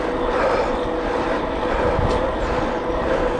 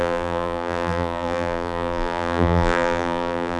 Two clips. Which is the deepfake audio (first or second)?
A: second